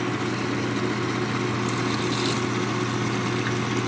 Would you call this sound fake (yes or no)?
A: no